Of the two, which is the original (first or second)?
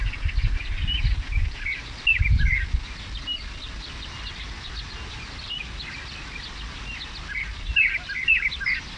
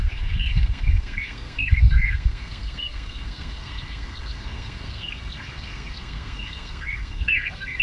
first